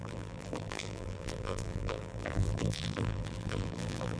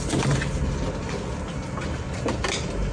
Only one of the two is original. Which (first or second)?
second